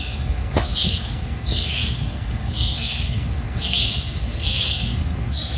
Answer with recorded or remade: remade